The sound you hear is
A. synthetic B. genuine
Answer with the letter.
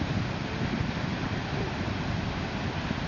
B